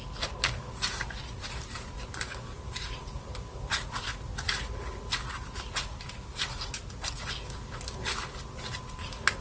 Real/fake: real